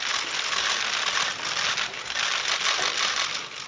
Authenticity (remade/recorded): recorded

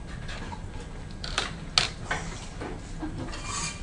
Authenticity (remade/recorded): recorded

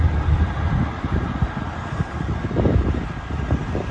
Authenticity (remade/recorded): remade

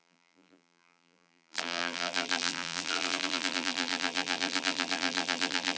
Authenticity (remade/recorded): remade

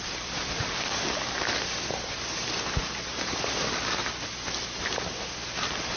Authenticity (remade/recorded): remade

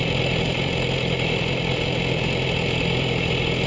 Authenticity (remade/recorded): remade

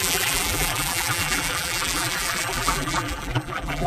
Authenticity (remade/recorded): remade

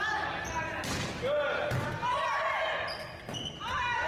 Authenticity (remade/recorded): recorded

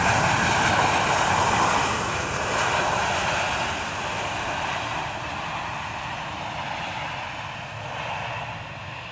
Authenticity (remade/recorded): recorded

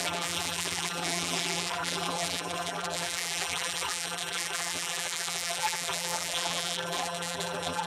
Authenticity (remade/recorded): remade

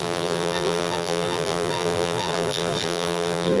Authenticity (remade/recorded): remade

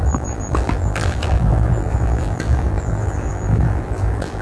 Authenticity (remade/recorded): remade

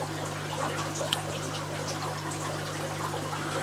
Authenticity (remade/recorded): recorded